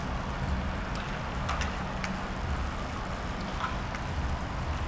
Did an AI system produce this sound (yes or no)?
no